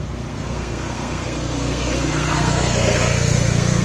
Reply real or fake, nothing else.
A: fake